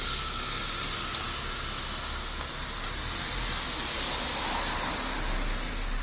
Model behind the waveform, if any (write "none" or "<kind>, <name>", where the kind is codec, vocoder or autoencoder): none